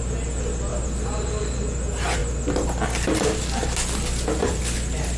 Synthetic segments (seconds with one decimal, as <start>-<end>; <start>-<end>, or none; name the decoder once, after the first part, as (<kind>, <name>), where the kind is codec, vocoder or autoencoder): none